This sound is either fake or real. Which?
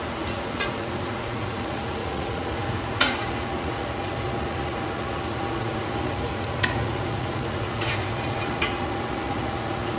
fake